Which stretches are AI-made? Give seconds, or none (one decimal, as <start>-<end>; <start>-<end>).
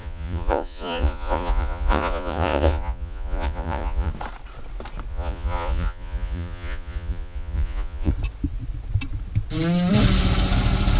0.0-4.1; 5.1-8.1